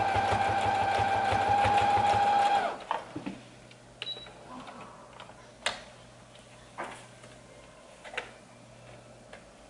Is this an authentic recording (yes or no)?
yes